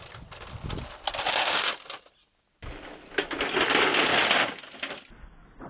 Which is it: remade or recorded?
recorded